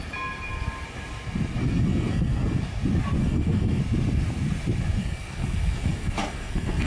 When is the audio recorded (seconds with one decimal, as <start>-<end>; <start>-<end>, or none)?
0.0-1.6; 2.6-3.2; 3.8-5.0